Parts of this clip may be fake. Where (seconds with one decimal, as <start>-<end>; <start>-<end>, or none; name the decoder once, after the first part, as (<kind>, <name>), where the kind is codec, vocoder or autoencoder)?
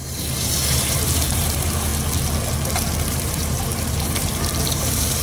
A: 0.0-1.9 (vocoder, BigVGAN v2); 3.1-5.2